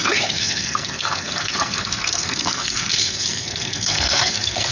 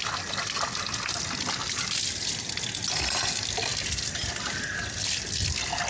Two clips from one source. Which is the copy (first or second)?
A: first